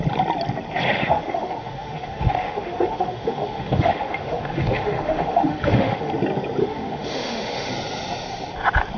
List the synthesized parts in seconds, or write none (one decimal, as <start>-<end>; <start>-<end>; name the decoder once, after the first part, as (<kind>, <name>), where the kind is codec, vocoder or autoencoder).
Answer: 1.0-6.1 (autoencoder, DAC-VAE); 6.6-7.7